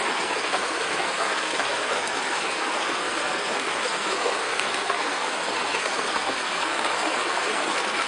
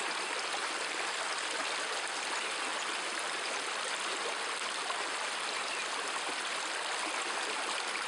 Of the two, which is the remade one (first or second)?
first